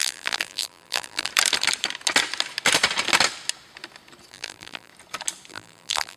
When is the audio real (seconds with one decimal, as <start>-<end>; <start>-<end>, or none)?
1.3-4.3; 4.9-5.5